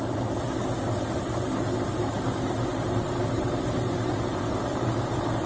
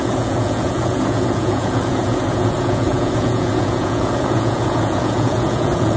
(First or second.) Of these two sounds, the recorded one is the first